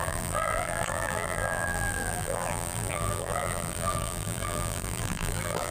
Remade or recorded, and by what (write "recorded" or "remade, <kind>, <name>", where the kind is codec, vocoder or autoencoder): remade, vocoder, BigVGAN v2